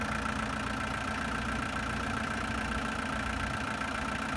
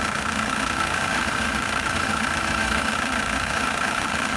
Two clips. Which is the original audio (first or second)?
first